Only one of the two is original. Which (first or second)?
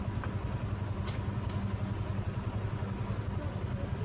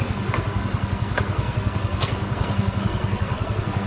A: first